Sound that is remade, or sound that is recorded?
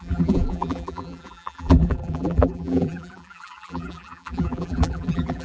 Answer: remade